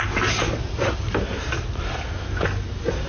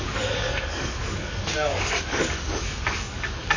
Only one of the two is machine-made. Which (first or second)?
second